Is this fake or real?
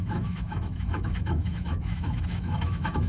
fake